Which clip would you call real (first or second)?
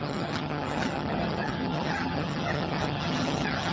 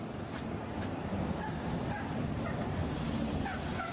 second